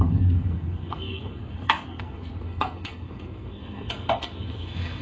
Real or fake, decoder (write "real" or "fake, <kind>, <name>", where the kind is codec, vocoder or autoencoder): fake, codec, SNAC